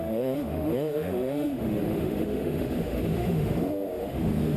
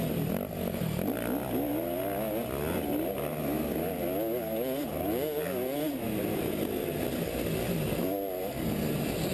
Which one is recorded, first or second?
second